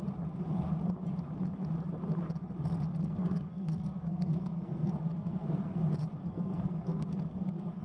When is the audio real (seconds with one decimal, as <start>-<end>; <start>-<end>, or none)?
0.0-2.9; 5.8-6.2